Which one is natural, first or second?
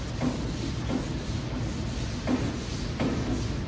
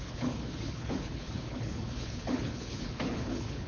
first